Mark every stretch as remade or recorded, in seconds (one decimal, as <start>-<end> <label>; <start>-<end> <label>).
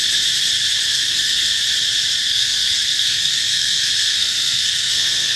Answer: 0.0-0.9 recorded; 0.9-1.5 remade; 1.5-2.2 recorded; 2.2-5.4 remade